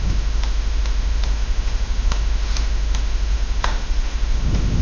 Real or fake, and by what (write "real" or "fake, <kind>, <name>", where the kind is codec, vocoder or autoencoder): fake, autoencoder, DAC-VAE